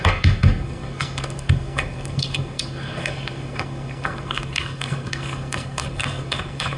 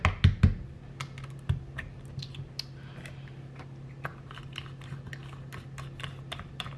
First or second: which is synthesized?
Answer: first